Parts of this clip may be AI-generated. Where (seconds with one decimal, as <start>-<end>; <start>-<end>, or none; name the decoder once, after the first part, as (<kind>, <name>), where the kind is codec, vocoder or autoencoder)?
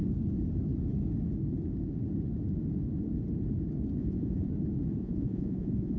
4.0-4.5 (vocoder, Vocos); 5.0-6.0